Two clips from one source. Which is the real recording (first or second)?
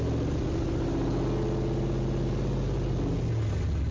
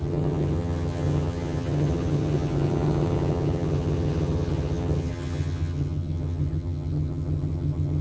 first